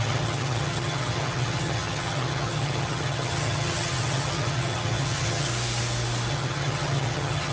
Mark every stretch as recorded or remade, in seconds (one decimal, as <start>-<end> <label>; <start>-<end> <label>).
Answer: 0.0-5.5 remade; 5.5-6.3 recorded; 6.3-7.5 remade